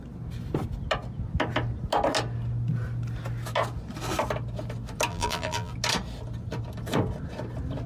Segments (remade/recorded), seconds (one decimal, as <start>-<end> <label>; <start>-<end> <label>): 0.0-5.1 recorded; 5.1-5.7 remade; 5.7-7.9 recorded